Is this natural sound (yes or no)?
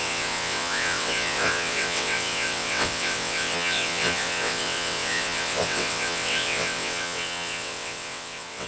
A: no